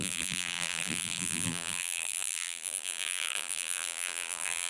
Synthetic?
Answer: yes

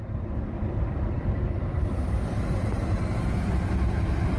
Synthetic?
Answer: yes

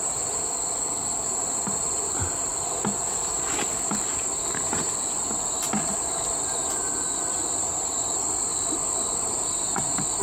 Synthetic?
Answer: no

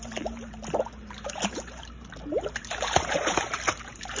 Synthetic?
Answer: yes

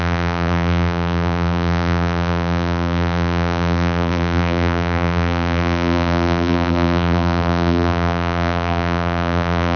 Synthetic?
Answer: yes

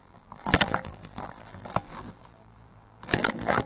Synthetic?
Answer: yes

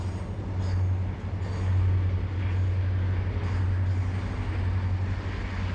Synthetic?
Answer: no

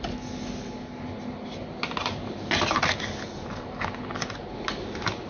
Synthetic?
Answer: no